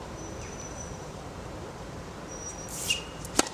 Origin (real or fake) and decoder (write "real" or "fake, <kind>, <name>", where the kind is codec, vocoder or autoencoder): fake, vocoder, BigVGAN v2